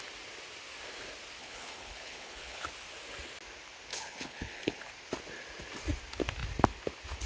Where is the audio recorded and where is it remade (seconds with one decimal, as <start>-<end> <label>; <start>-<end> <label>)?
0.0-1.4 recorded; 1.4-2.7 remade; 2.7-3.9 recorded; 3.9-4.9 remade; 4.9-7.3 recorded

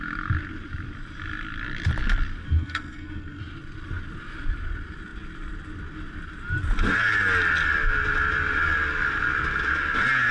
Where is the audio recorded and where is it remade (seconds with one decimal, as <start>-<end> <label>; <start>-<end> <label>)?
0.0-2.4 recorded; 2.4-3.4 remade; 3.4-10.3 recorded

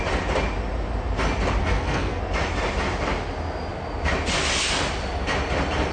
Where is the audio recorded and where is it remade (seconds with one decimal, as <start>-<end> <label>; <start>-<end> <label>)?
0.0-1.6 recorded; 1.6-2.2 remade; 2.2-5.9 recorded

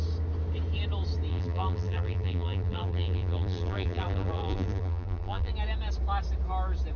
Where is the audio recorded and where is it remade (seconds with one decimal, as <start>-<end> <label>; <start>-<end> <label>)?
0.0-1.3 recorded; 1.3-5.5 remade; 5.5-7.0 recorded

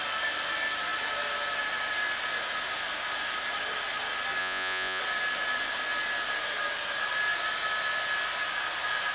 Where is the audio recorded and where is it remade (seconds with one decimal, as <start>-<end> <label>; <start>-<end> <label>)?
0.0-4.4 recorded; 4.4-5.0 remade; 5.0-9.1 recorded

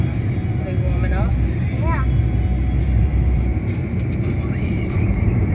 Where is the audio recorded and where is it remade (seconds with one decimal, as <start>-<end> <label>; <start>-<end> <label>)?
0.0-3.1 recorded; 3.1-5.5 remade